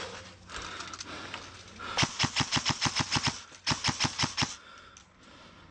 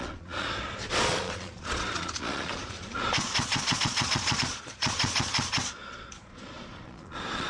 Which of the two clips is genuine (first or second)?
first